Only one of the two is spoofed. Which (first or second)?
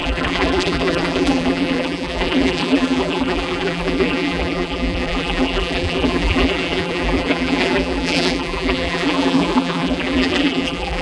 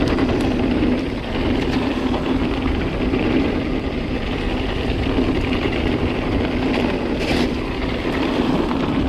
first